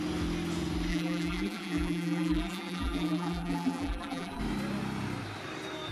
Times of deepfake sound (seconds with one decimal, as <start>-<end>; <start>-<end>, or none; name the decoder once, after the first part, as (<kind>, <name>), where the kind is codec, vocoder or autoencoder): 0.9-4.4 (vocoder, BigVGAN v2)